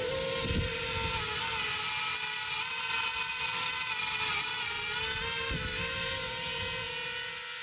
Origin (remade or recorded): recorded